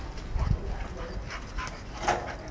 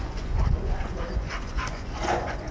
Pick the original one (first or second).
first